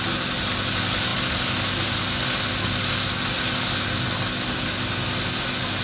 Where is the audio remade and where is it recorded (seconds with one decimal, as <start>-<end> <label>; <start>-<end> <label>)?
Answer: 0.0-5.8 recorded